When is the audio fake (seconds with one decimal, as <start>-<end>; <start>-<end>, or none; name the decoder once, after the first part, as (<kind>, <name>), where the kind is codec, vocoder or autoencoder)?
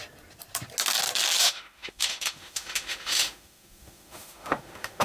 1.4-5.0 (autoencoder, DAC-VAE)